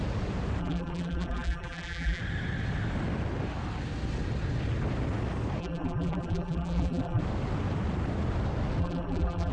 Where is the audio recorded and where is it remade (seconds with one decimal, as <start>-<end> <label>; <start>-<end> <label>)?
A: 0.0-0.6 recorded; 0.6-2.2 remade; 2.2-5.6 recorded; 5.6-7.2 remade; 7.2-8.8 recorded; 8.8-9.5 remade